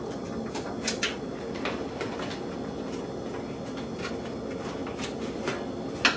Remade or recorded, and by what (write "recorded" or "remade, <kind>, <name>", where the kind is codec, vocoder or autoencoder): recorded